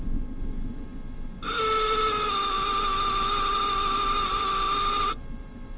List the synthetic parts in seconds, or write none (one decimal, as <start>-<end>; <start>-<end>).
none